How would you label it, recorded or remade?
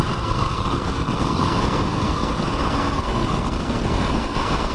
remade